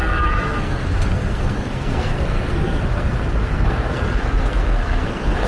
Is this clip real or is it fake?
fake